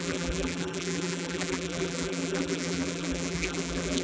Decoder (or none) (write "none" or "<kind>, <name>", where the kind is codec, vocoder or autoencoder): vocoder, BigVGAN v2